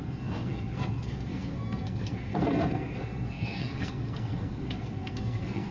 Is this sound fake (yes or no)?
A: yes